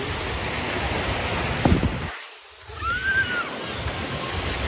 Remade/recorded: recorded